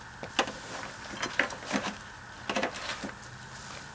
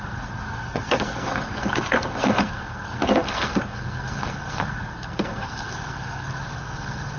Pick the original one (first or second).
first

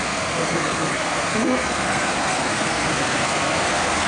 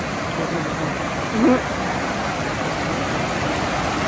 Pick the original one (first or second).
second